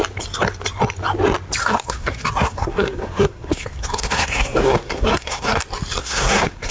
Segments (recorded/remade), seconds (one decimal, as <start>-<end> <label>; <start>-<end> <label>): 0.0-1.6 recorded; 1.6-5.6 remade; 5.6-6.0 recorded; 6.0-6.7 remade